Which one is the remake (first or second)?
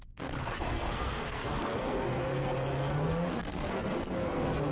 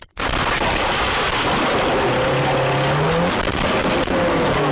first